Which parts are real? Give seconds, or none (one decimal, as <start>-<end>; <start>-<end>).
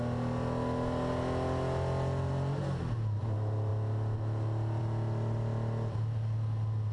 0.0-6.9